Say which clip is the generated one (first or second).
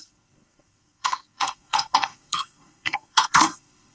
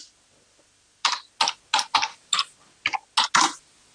first